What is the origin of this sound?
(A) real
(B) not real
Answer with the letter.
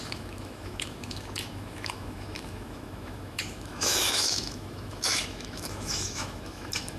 B